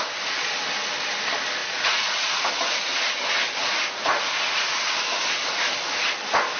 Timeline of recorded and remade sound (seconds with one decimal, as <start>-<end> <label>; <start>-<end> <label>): 0.0-1.6 recorded; 1.6-2.5 remade; 2.5-4.0 recorded; 4.0-4.8 remade; 4.8-6.6 recorded